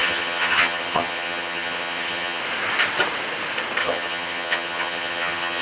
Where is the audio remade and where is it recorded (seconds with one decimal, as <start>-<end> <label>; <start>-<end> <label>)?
0.0-2.4 remade; 2.4-3.8 recorded; 3.8-5.6 remade